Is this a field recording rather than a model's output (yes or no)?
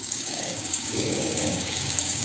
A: no